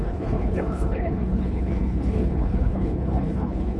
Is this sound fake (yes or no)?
yes